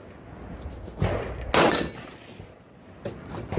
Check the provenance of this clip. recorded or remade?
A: recorded